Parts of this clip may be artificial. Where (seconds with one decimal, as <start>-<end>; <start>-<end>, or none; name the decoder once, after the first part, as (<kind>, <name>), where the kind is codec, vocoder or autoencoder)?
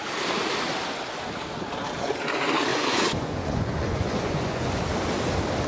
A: 2.7-4.8 (vocoder, Vocos)